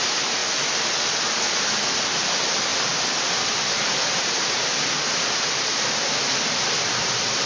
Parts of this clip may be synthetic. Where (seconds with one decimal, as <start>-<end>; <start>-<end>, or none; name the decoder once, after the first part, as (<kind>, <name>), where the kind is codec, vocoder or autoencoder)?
none